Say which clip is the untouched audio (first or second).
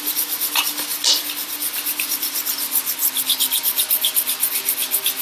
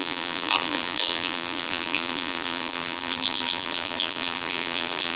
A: first